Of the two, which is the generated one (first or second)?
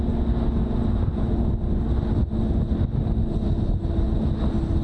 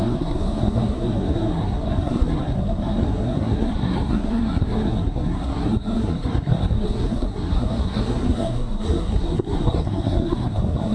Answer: second